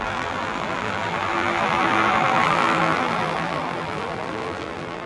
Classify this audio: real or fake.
fake